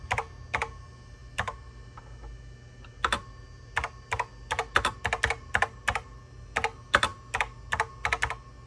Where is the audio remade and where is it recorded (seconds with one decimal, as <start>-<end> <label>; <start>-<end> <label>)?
0.0-8.7 recorded